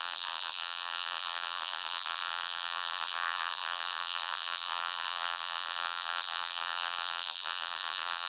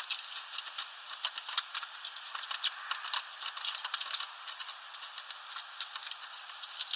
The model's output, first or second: first